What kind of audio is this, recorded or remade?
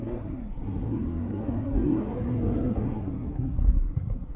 remade